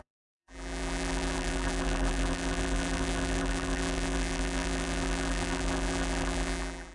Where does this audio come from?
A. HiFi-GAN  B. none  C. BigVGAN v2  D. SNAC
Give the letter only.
C